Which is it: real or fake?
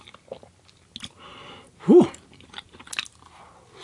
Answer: real